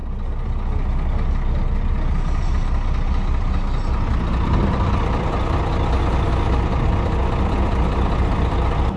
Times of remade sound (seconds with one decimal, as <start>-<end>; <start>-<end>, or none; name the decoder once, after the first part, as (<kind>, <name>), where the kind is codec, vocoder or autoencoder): none